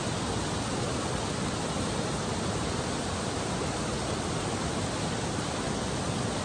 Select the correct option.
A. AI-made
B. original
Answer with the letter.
B